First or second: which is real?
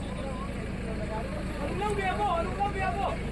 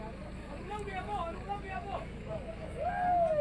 first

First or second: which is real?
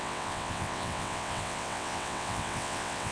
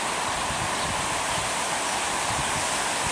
second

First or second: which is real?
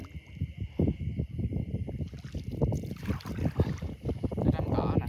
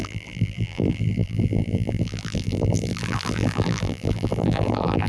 first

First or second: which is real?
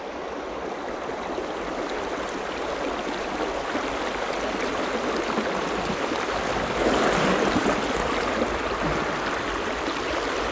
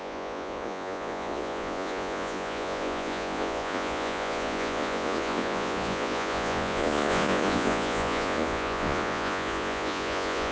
first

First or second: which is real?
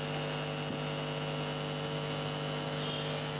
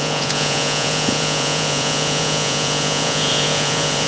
first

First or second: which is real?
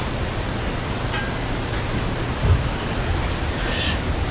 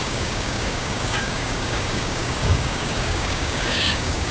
first